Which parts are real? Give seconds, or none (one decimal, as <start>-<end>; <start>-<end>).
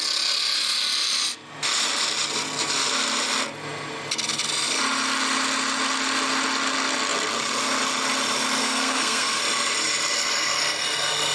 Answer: 0.0-8.6; 9.4-11.3